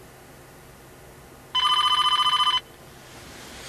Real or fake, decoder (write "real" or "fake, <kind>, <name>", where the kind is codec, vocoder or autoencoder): real